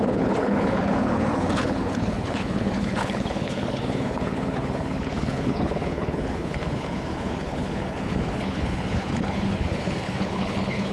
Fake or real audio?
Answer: fake